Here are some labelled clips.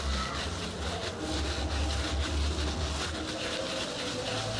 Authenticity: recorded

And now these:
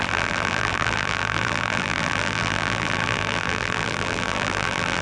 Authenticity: remade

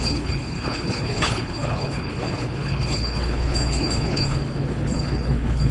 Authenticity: remade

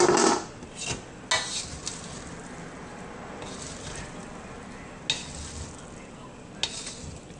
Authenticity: recorded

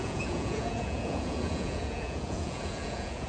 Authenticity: remade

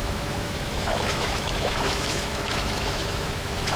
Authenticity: remade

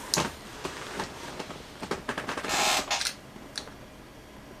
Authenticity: recorded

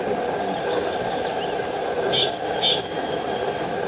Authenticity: recorded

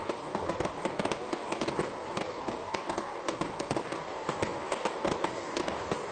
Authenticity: remade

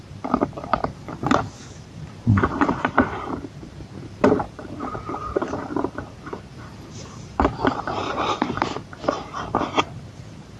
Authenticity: remade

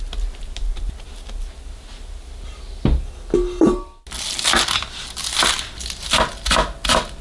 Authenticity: recorded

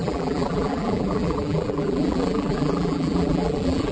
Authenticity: remade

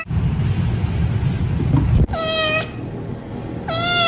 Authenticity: recorded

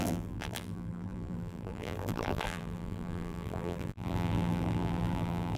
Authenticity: remade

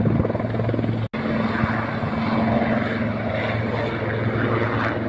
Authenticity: recorded